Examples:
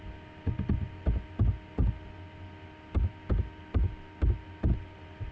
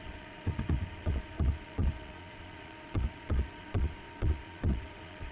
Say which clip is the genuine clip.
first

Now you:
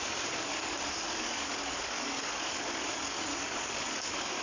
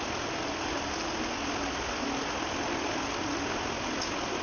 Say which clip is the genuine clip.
second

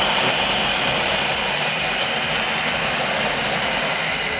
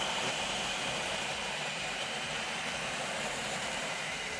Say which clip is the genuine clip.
first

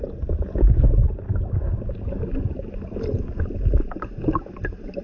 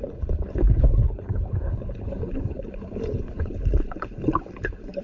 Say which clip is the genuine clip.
first